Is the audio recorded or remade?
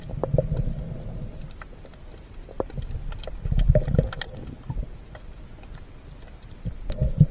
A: recorded